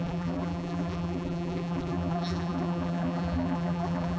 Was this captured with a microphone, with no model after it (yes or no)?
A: no